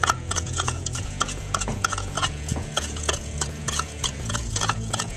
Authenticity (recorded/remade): remade